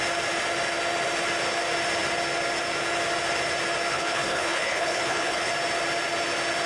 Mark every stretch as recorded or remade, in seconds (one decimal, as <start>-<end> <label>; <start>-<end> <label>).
0.0-3.9 recorded; 3.9-5.5 remade; 5.5-6.7 recorded